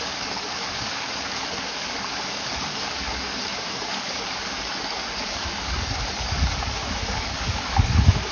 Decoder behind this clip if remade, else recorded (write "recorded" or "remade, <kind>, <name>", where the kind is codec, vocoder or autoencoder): remade, codec, DAC